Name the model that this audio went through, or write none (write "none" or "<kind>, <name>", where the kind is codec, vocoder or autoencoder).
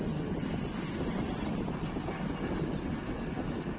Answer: none